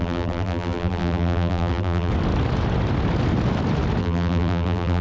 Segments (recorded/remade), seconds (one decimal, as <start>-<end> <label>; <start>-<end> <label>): 0.0-2.1 remade; 2.1-4.0 recorded; 4.0-5.0 remade